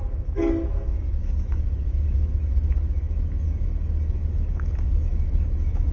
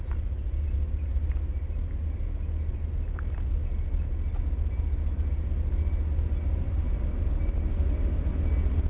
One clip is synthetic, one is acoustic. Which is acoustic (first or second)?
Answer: second